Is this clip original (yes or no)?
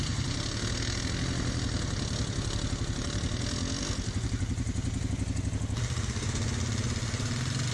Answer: yes